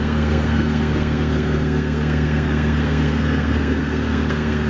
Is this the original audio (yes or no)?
no